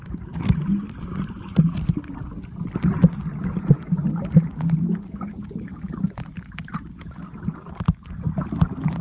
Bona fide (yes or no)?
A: yes